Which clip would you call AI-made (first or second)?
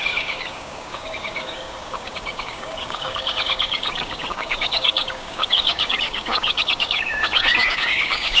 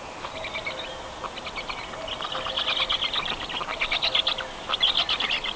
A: first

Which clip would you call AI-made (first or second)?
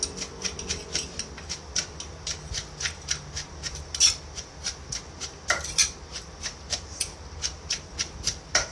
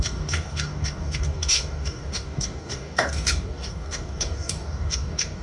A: second